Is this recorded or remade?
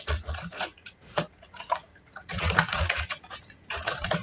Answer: remade